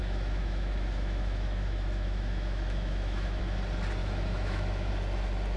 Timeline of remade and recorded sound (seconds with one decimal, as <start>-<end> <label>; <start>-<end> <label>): 0.0-3.4 remade; 3.4-4.0 recorded; 4.0-4.9 remade; 4.9-5.6 recorded